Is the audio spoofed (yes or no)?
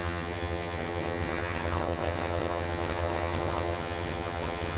yes